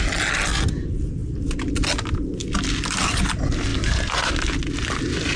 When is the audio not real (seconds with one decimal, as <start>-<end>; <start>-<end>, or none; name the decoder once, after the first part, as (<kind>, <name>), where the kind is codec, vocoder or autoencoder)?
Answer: none